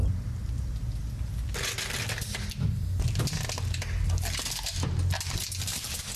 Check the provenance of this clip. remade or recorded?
recorded